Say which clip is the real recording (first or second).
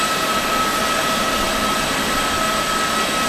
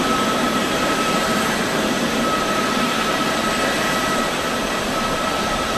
first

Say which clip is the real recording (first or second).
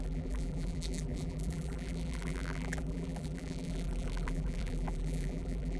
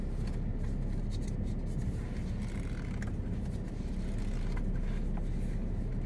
second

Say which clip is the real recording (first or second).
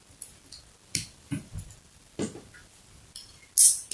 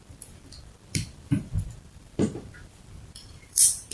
first